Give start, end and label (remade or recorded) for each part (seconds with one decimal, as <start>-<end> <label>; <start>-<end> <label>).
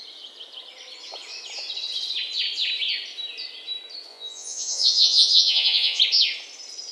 0.0-4.1 recorded; 4.1-6.0 remade; 6.0-6.9 recorded